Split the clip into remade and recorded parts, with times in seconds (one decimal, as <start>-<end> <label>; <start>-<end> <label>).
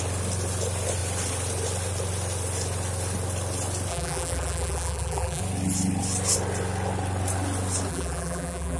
0.0-3.9 recorded; 3.9-5.4 remade; 5.4-7.9 recorded; 7.9-8.8 remade